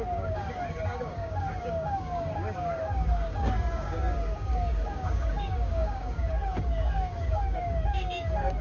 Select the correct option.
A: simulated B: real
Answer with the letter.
A